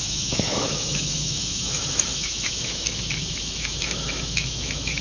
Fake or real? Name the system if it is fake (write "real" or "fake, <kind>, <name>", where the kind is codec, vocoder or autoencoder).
fake, autoencoder, DAC-VAE